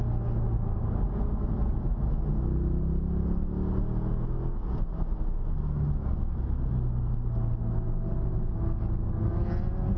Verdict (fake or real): real